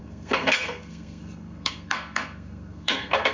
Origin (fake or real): fake